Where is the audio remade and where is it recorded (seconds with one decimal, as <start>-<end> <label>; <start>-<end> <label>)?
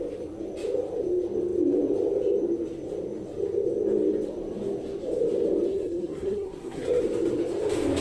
0.0-5.7 recorded; 5.7-7.0 remade; 7.0-8.0 recorded